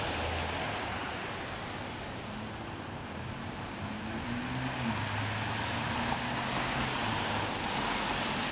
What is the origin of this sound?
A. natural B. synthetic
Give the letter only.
A